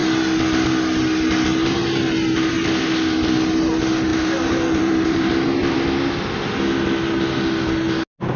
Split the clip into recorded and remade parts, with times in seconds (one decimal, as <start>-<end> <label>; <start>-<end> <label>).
0.0-4.1 recorded; 4.1-6.1 remade; 6.1-8.4 recorded